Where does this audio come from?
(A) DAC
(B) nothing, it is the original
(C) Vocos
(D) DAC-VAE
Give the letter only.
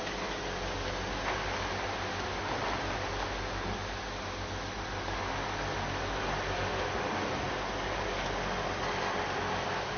B